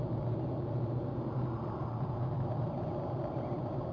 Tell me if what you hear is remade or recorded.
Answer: recorded